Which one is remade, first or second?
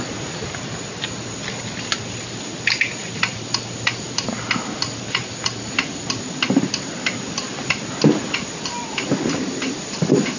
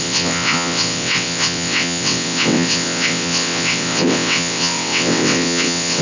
second